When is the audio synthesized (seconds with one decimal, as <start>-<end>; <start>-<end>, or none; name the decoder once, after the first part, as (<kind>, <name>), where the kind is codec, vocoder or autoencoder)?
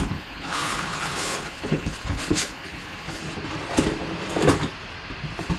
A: 0.0-3.2 (codec, HILCodec)